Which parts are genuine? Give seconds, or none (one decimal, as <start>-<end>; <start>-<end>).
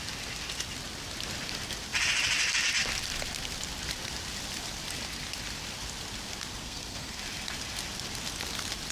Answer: 0.0-6.6; 7.2-8.9